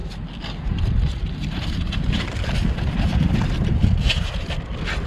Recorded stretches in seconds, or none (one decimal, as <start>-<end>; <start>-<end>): 0.0-1.0; 3.1-4.5